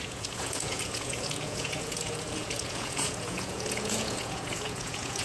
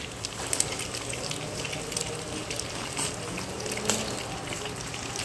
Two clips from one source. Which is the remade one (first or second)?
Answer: first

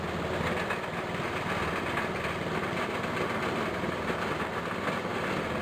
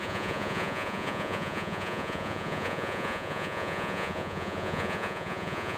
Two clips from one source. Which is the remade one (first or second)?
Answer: second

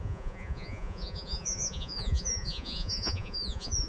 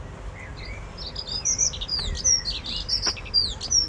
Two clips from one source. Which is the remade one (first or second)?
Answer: first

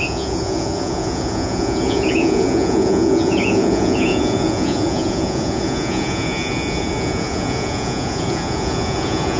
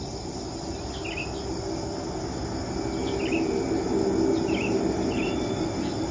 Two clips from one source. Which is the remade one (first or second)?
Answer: first